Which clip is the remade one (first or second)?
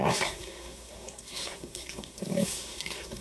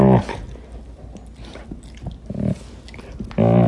first